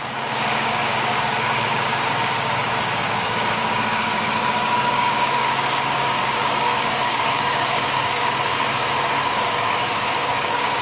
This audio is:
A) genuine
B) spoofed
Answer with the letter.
B